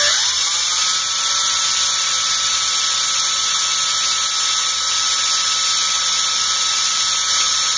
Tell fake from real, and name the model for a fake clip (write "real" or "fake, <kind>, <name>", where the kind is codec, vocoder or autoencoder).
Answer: real